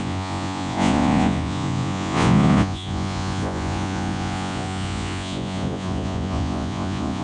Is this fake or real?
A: fake